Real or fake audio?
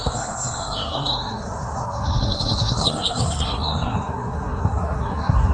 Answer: fake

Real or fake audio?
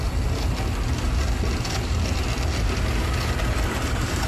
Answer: real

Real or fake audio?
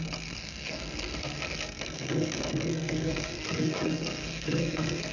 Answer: fake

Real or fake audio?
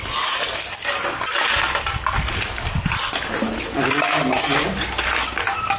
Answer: real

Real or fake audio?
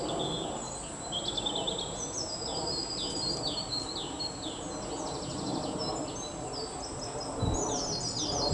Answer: real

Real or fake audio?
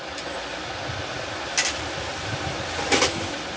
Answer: real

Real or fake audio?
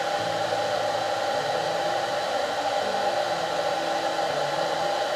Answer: real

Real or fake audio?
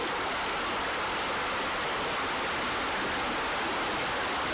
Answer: real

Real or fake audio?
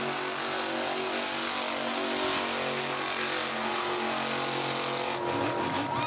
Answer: real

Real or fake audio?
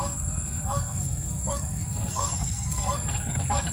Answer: fake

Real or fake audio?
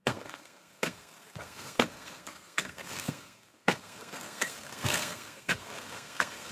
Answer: fake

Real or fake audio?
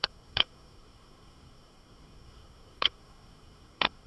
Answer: fake